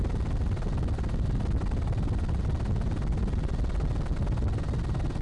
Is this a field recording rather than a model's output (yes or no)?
yes